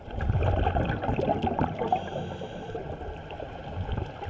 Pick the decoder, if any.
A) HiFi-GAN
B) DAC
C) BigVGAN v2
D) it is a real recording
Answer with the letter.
D